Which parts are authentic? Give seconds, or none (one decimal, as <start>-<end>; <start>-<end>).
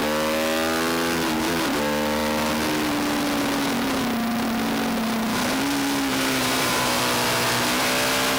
0.0-6.1; 7.0-8.4